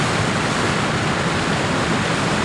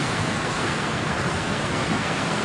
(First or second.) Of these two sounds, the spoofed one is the second